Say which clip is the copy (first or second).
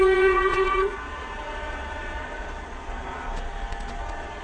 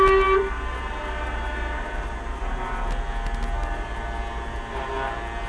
first